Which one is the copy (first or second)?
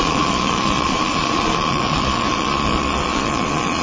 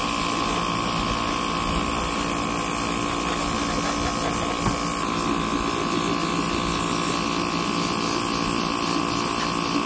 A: first